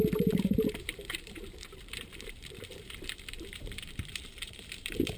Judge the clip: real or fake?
fake